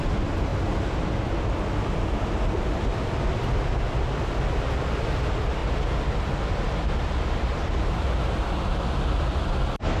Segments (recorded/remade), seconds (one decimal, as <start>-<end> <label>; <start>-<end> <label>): 0.0-5.6 recorded; 5.6-8.4 remade; 8.4-10.0 recorded